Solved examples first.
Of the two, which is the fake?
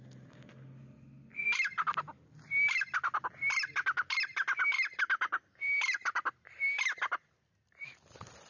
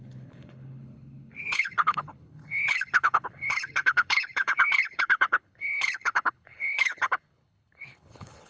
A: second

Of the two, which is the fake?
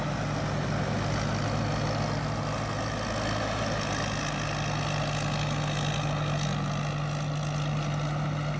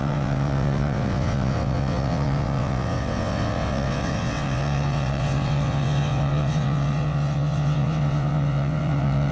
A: second